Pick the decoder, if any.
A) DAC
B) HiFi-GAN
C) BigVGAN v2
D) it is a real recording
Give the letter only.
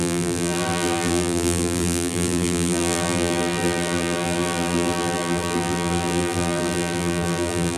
C